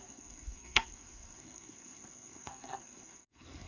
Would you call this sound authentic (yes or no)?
no